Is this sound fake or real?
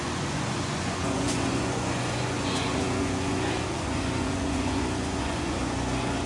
fake